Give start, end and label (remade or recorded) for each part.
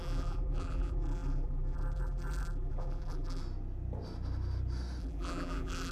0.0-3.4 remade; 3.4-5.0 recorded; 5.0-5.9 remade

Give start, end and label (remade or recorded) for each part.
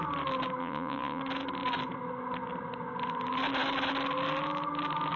0.0-0.6 recorded; 0.6-1.2 remade; 1.2-5.2 recorded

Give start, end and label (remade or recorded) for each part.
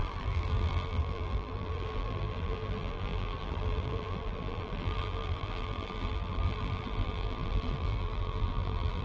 0.0-9.0 remade